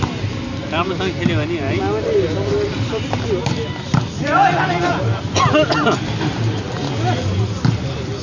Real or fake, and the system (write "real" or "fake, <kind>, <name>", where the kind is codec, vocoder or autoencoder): real